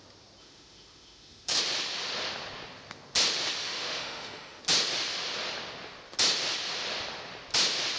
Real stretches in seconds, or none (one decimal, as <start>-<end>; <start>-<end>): 0.0-0.4; 1.6-3.6; 4.6-8.0